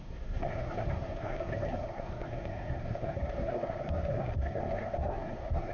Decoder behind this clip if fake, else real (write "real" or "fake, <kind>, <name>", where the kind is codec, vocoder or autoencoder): fake, codec, SNAC